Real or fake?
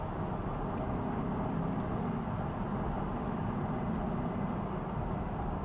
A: real